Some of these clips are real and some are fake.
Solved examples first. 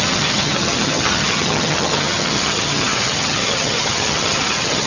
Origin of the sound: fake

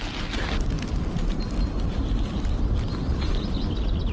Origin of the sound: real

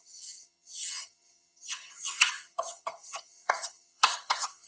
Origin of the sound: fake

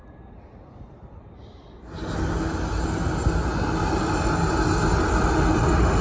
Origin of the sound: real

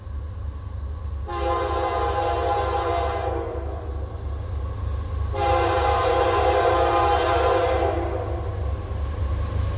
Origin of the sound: real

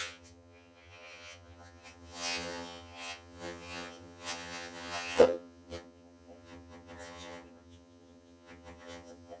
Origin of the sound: fake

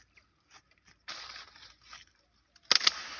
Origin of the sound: real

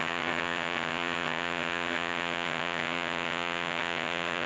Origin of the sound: fake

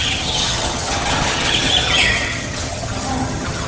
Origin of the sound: fake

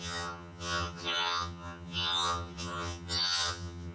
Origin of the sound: fake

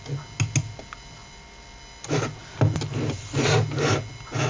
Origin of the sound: real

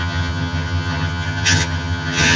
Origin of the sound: fake